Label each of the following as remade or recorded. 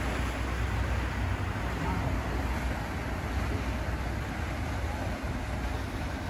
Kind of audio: recorded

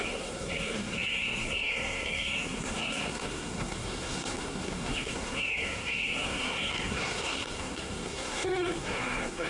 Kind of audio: remade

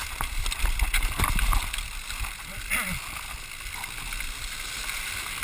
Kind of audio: recorded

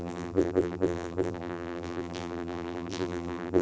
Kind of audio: remade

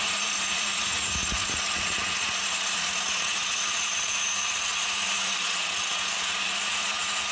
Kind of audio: remade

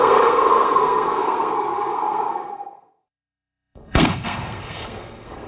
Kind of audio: remade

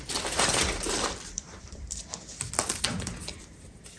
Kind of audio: remade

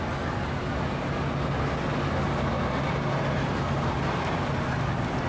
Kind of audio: recorded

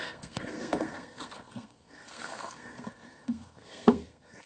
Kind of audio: remade